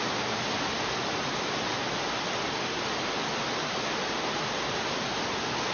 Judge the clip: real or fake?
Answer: real